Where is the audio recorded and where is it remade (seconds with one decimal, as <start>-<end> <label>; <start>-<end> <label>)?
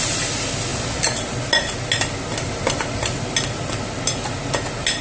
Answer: 0.0-5.0 recorded